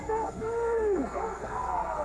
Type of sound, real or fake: fake